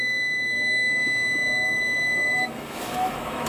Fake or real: fake